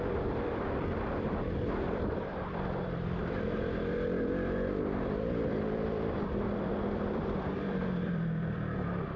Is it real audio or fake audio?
fake